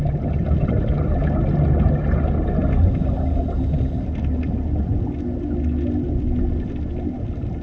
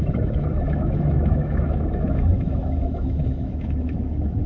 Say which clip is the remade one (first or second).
second